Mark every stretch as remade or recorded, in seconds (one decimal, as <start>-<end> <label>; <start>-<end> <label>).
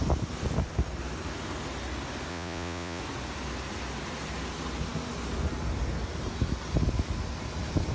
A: 0.0-2.3 recorded; 2.3-3.0 remade; 3.0-7.9 recorded